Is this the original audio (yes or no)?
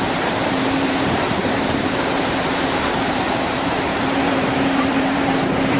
no